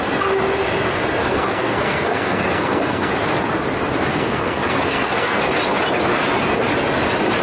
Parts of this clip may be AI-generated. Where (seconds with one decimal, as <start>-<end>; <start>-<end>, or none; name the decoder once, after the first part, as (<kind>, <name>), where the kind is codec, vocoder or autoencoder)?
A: 1.2-3.1 (codec, SNAC); 4.1-5.5